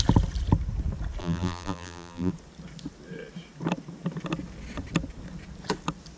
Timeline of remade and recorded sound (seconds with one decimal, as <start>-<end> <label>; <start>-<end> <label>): 0.0-1.2 recorded; 1.2-2.3 remade; 2.3-6.2 recorded